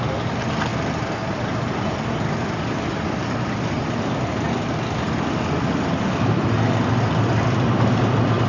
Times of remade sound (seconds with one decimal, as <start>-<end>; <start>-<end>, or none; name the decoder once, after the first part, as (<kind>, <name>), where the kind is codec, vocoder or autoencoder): none